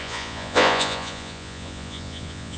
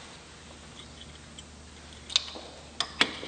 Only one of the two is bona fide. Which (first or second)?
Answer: second